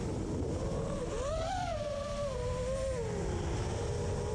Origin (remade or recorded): recorded